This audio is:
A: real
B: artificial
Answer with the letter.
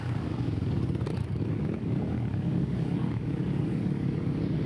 B